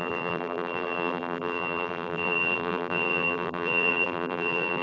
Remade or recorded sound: remade